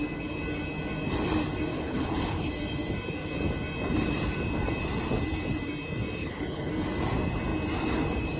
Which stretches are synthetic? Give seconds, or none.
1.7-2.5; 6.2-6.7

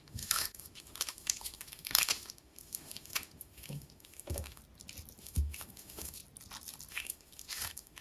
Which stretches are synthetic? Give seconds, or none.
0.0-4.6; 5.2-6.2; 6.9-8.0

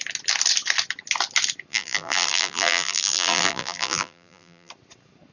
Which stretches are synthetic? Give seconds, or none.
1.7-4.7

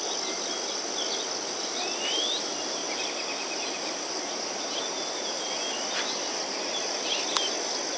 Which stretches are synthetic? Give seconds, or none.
none

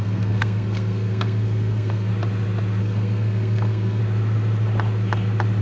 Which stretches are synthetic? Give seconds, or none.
0.0-2.1; 2.8-4.0